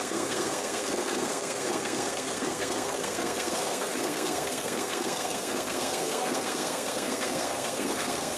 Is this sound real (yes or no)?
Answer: no